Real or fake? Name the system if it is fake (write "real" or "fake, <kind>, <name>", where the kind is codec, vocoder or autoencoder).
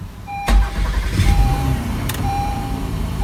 fake, vocoder, BigVGAN v2